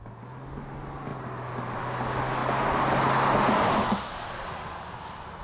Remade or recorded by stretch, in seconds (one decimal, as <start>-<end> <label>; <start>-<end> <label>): 0.0-5.4 recorded